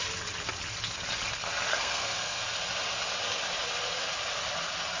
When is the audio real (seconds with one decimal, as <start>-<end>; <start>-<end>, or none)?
0.0-1.7; 2.4-5.0